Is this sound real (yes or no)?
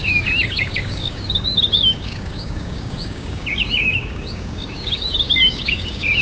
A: no